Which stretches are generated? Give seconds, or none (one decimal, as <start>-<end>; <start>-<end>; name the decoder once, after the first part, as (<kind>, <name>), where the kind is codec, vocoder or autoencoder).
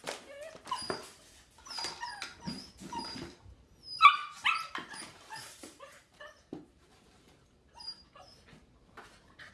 4.2-9.5 (vocoder, BigVGAN v2)